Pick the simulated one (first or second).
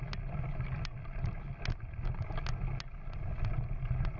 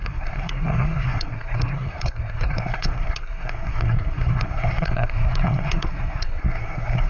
second